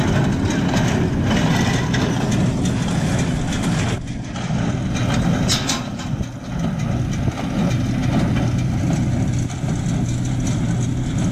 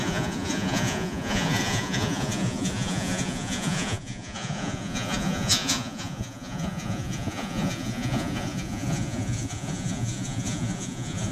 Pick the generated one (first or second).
second